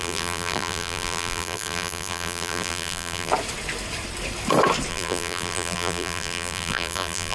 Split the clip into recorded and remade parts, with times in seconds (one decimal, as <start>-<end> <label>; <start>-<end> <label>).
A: 0.0-3.3 remade; 3.3-4.9 recorded; 4.9-7.3 remade